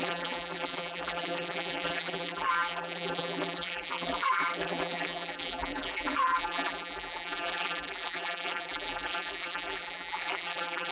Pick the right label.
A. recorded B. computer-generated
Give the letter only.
B